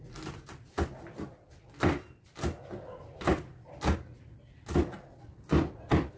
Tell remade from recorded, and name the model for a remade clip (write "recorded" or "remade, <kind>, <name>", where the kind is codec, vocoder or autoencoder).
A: recorded